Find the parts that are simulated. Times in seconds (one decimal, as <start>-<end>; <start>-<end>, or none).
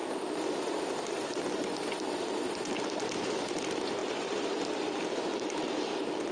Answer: 2.8-4.0; 5.0-6.3